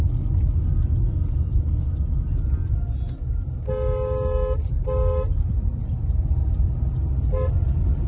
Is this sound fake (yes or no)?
no